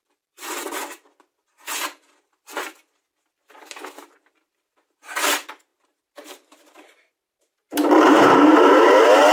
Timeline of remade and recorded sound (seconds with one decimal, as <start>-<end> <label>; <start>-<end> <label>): 0.0-5.7 recorded; 5.7-8.6 remade; 8.6-9.3 recorded